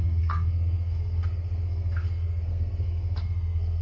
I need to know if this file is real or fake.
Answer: fake